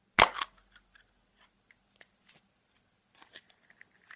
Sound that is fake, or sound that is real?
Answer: real